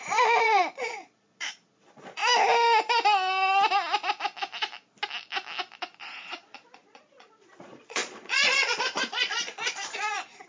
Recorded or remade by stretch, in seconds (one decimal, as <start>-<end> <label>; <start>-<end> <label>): 0.0-2.2 remade; 2.2-6.0 recorded; 6.0-10.5 remade